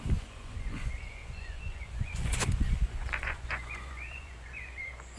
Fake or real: fake